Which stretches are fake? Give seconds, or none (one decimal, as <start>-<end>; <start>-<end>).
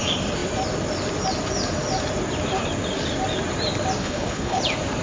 4.0-4.6